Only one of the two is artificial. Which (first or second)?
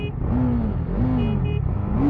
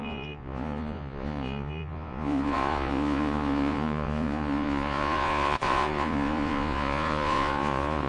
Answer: second